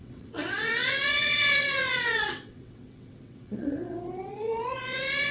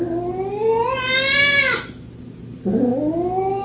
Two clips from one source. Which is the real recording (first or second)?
second